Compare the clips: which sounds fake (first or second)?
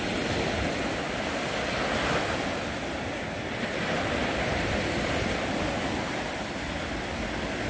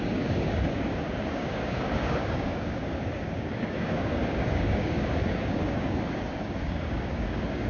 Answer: second